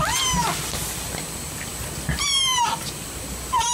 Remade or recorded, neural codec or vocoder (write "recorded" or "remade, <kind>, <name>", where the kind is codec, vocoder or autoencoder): recorded